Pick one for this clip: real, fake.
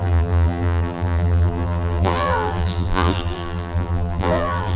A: fake